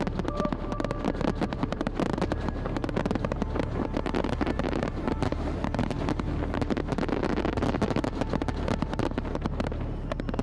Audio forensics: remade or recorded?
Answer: remade